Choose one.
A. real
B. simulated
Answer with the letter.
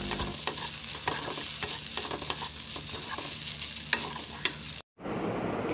A